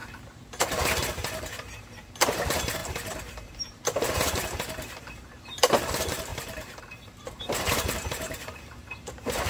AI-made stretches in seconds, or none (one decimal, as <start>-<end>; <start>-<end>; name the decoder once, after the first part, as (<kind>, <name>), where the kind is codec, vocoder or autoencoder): 0.0-9.5 (vocoder, BigVGAN v2)